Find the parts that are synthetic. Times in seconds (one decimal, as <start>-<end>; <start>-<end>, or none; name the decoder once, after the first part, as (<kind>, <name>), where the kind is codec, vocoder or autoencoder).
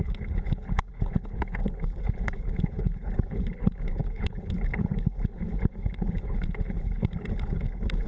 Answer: 0.0-8.1 (codec, HILCodec)